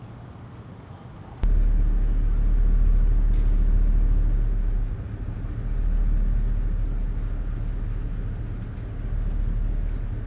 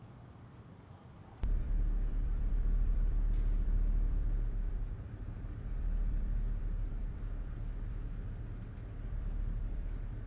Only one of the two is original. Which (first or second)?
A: first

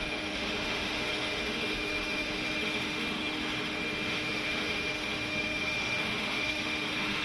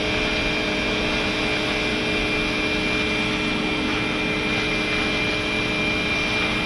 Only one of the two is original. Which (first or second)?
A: second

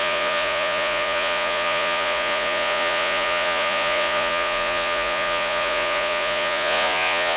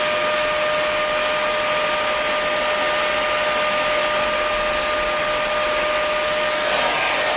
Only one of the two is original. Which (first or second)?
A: second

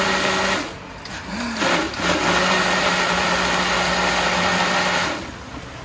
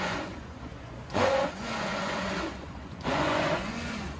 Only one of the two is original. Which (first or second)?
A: first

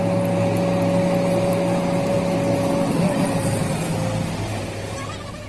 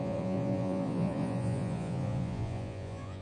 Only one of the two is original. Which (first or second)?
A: first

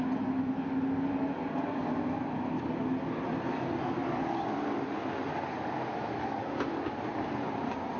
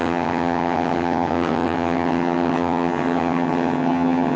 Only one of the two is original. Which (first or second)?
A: first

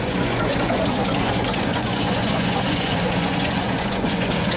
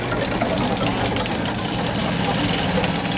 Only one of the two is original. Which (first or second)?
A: second